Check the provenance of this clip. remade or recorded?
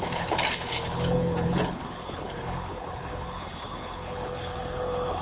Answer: remade